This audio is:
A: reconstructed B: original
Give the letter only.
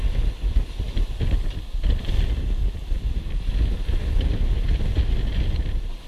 B